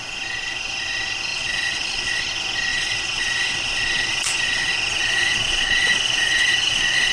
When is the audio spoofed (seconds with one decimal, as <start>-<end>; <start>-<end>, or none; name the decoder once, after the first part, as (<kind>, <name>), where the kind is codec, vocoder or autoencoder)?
1.3-2.2 (vocoder, Vocos); 2.7-7.1